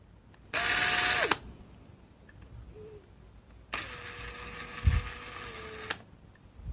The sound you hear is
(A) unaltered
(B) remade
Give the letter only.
A